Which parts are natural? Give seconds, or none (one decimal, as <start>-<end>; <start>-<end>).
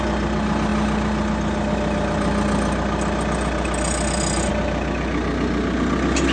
0.0-6.3